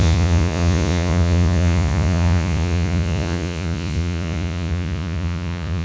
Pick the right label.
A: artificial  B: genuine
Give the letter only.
A